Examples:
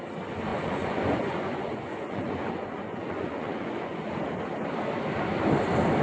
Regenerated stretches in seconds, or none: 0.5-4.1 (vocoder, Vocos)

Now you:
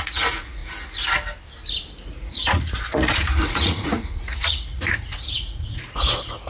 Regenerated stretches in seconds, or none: 0.0-0.6 (vocoder, Vocos); 2.0-6.5

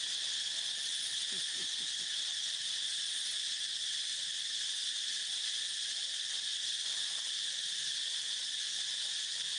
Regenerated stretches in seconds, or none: 0.9-1.7 (vocoder, Vocos)

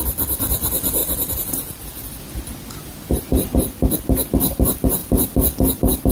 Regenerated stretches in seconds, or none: 1.0-1.9 (vocoder, Vocos)

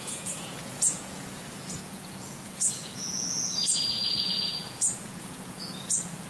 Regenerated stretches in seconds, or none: 0.0-6.3 (vocoder, Vocos)